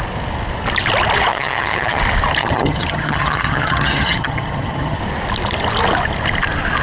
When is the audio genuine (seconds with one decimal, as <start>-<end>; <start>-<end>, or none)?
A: 0.0-1.3; 2.0-2.4; 5.0-6.8